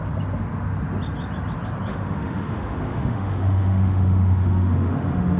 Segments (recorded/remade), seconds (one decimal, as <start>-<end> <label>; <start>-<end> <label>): 0.0-1.9 recorded; 1.9-5.4 remade